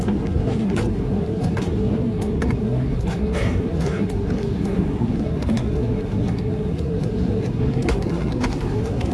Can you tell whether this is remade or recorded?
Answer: remade